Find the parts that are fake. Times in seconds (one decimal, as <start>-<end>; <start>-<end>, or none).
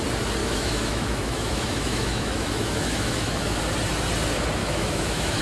0.4-3.6; 4.6-5.4